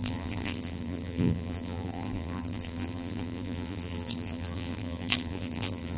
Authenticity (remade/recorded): remade